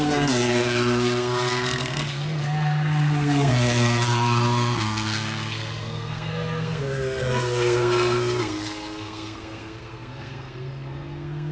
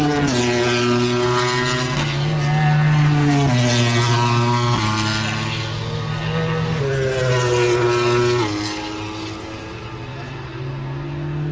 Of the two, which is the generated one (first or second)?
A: first